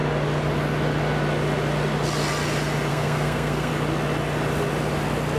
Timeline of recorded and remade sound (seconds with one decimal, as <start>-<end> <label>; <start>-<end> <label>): 0.0-2.9 recorded; 2.9-3.7 remade; 3.7-5.4 recorded